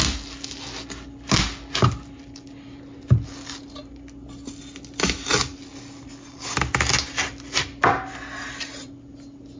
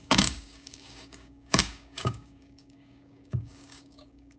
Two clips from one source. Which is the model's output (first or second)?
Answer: second